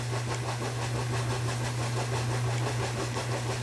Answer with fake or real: real